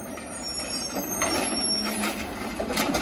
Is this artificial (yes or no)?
yes